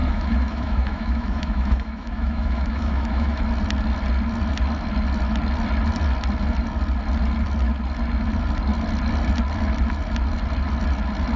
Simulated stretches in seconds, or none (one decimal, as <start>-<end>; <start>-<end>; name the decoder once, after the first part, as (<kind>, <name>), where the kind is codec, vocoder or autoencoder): 0.0-3.4 (autoencoder, DAC-VAE)